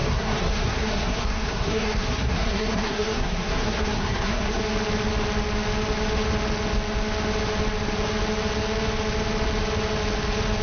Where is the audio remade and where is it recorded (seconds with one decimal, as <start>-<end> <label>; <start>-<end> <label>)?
0.0-4.6 remade; 4.6-10.6 recorded